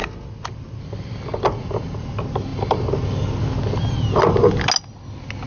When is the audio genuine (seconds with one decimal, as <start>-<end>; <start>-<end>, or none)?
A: 0.0-5.5